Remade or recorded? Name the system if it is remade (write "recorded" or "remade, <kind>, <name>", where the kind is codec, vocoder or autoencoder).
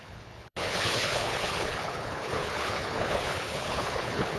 remade, codec, HILCodec